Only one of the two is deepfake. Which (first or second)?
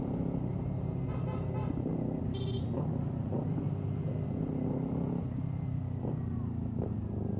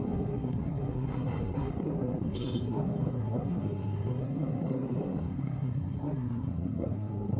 second